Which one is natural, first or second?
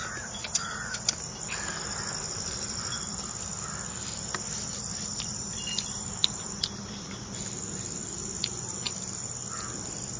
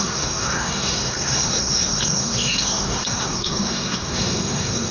first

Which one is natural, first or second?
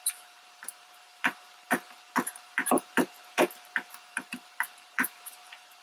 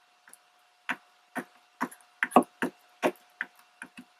second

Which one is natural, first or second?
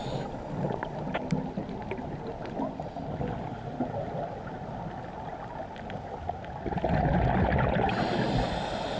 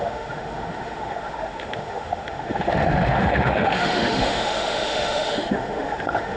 first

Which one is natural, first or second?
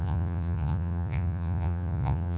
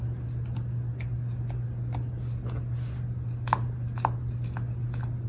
second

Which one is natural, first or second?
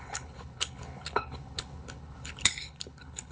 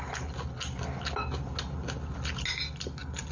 second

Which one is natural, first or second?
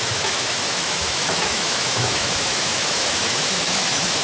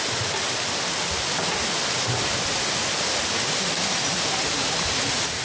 second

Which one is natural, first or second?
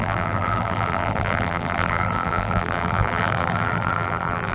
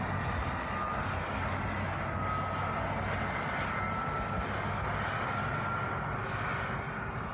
second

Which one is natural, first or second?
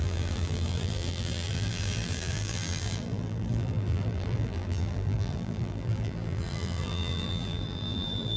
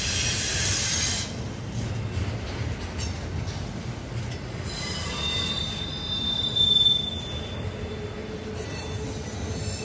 second